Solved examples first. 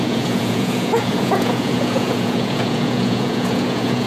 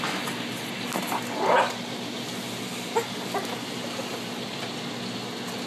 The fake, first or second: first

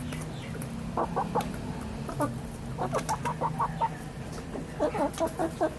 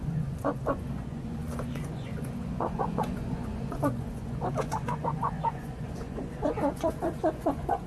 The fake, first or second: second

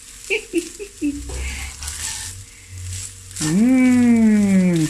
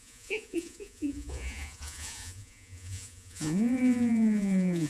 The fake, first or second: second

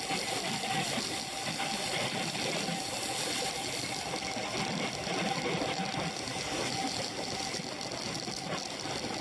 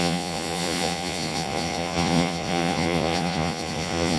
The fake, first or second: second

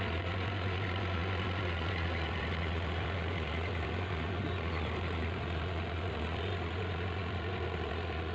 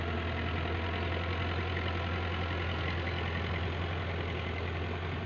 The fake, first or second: first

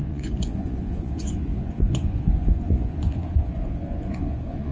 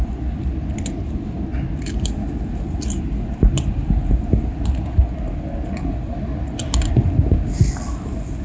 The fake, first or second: first